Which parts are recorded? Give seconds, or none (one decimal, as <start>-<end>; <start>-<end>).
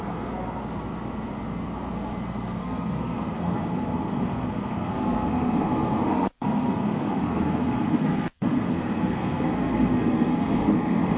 0.6-2.6